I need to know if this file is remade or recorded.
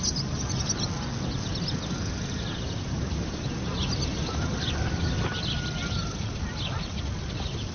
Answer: recorded